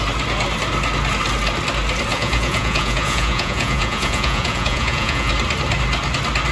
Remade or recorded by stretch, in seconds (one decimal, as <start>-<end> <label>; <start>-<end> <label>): 0.0-2.1 recorded; 2.1-5.3 remade; 5.3-6.5 recorded